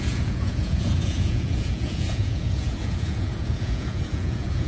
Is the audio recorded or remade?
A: remade